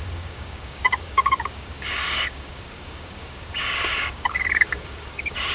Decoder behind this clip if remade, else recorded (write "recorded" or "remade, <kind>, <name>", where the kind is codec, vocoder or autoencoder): remade, codec, DAC